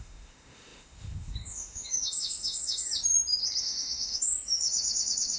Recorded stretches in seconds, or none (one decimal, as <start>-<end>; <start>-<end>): 2.9-3.6